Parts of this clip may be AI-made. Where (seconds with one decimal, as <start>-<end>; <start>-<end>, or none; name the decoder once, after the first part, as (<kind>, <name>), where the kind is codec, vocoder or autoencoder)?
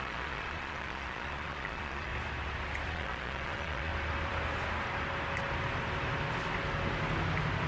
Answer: 0.0-2.1 (vocoder, Vocos); 2.9-3.9